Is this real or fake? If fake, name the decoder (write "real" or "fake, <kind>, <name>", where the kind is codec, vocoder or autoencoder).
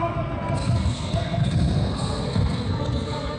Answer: fake, codec, SNAC